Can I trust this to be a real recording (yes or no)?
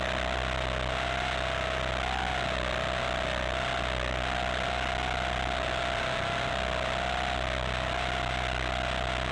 yes